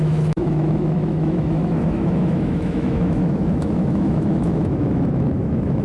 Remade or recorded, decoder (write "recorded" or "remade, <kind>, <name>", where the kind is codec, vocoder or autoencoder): remade, autoencoder, DAC-VAE